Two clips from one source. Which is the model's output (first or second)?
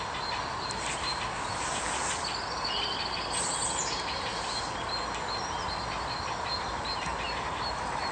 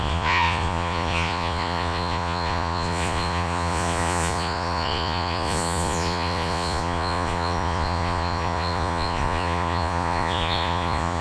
second